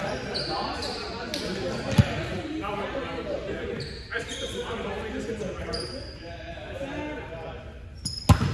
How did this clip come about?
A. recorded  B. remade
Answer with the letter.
A